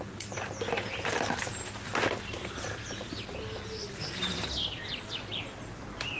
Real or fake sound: real